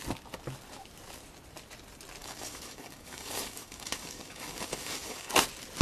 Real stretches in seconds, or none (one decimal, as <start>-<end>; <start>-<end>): 0.0-2.2; 5.3-5.8